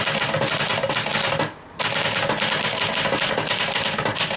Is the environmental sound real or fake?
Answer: real